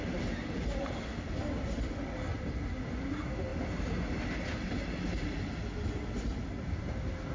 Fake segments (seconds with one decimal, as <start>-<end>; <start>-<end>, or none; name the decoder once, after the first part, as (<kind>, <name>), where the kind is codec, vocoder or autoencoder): none